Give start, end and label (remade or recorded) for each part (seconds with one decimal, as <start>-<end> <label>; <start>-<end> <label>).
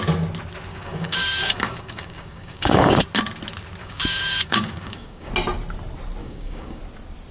0.0-0.7 recorded; 0.7-3.0 remade; 3.0-3.8 recorded; 3.8-5.3 remade; 5.3-6.2 recorded; 6.2-6.8 remade; 6.8-7.3 recorded